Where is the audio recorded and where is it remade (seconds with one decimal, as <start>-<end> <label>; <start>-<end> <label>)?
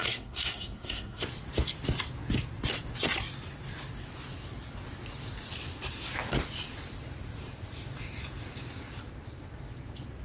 0.0-1.2 remade; 1.2-10.2 recorded